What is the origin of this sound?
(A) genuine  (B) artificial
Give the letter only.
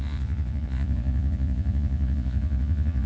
B